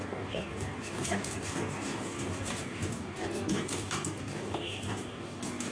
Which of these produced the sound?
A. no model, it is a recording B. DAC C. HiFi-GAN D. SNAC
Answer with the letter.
B